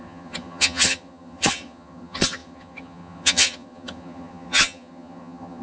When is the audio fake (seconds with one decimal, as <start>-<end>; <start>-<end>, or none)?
0.0-5.6